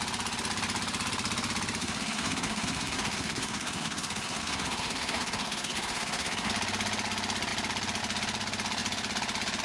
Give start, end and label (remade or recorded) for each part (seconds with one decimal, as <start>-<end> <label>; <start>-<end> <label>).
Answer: 0.0-1.8 recorded; 1.8-6.5 remade; 6.5-9.6 recorded

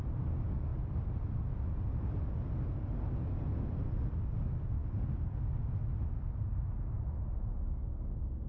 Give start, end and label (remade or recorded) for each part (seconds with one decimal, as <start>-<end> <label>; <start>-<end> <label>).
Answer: 0.0-8.5 recorded

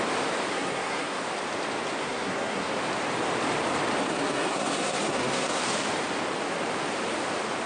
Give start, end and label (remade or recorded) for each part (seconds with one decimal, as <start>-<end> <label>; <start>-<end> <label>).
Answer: 0.0-0.5 recorded; 0.5-1.2 remade; 1.2-2.0 recorded; 2.0-2.7 remade; 2.7-4.0 recorded; 4.0-5.6 remade; 5.6-7.7 recorded

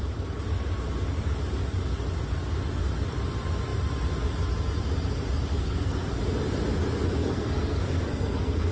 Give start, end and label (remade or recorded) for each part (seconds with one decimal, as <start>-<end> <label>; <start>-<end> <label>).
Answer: 0.0-5.5 recorded; 5.5-6.2 remade; 6.2-7.2 recorded; 7.2-8.7 remade

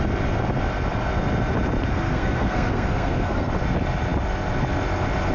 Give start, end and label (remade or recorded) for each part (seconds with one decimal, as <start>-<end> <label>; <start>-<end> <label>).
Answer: 0.0-1.9 recorded; 1.9-3.5 remade; 3.5-5.3 recorded

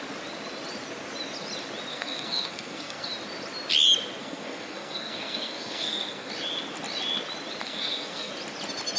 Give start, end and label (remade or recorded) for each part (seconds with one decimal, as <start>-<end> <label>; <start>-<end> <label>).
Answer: 0.0-1.9 recorded; 1.9-3.1 remade; 3.1-4.2 recorded; 4.2-6.3 remade; 6.3-7.6 recorded; 7.6-8.3 remade; 8.3-9.0 recorded